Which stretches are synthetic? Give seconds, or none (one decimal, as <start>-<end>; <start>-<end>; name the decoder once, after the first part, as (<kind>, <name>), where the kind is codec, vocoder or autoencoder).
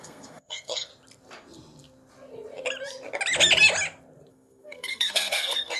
0.0-0.9 (codec, SNAC); 4.3-5.8